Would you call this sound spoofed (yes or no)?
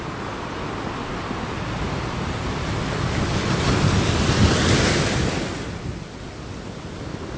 no